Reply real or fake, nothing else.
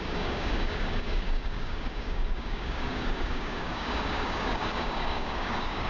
fake